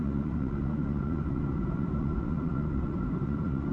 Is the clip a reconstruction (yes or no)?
yes